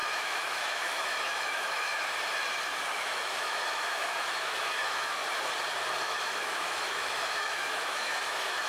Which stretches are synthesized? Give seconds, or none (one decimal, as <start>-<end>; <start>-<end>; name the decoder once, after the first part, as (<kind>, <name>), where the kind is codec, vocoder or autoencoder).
0.0-1.9 (autoencoder, DAC-VAE); 2.9-5.2; 6.0-8.7